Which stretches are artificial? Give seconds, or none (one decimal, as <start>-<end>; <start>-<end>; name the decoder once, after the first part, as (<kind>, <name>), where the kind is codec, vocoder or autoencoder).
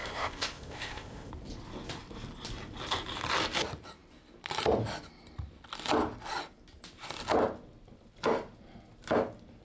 0.0-1.3 (codec, ZipCodec)